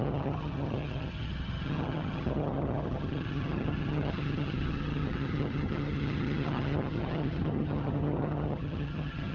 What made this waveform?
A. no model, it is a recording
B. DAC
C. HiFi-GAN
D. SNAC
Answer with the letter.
C